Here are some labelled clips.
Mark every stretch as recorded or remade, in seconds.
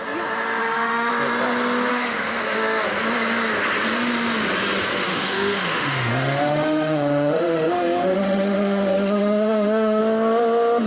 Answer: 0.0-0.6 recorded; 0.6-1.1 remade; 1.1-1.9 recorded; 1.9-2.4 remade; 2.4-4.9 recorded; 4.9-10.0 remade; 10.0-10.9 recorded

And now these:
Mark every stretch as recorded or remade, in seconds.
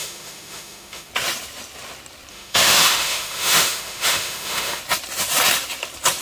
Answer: 0.0-1.1 remade; 1.1-2.3 recorded; 2.3-4.8 remade; 4.8-6.2 recorded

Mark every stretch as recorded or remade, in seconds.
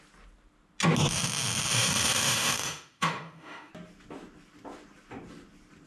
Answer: 0.0-1.7 recorded; 1.7-3.7 remade; 3.7-5.9 recorded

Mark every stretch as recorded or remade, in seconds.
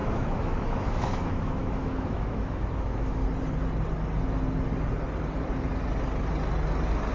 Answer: 0.0-3.2 remade; 3.2-7.1 recorded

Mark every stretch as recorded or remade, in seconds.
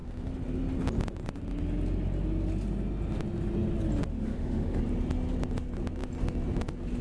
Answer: 0.0-4.1 recorded; 4.1-4.8 remade; 4.8-7.0 recorded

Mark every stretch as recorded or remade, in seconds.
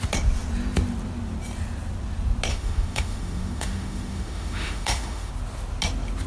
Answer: 0.0-2.5 recorded; 2.5-5.3 remade; 5.3-6.3 recorded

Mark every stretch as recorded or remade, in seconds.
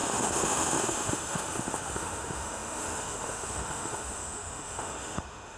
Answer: 0.0-5.6 remade